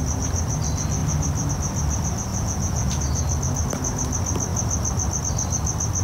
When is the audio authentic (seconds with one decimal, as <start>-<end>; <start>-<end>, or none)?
0.0-2.3; 3.0-6.0